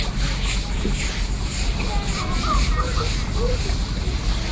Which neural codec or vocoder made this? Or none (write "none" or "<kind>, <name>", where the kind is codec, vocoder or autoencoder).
none